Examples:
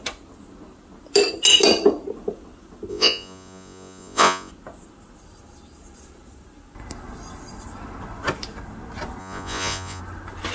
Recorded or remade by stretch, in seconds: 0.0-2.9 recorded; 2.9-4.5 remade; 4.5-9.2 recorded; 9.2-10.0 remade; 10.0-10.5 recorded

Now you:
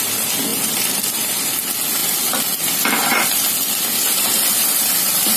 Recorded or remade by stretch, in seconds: 0.0-0.5 recorded; 0.5-1.4 remade; 1.4-2.0 recorded; 2.0-5.4 remade